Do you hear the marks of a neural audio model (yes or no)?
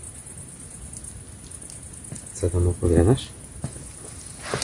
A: no